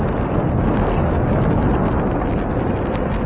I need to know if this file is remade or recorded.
recorded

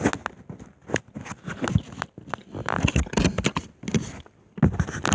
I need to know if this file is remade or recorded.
recorded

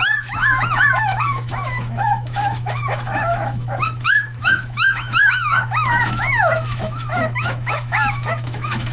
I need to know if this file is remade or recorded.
remade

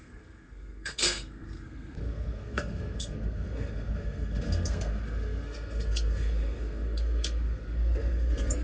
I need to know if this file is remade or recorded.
remade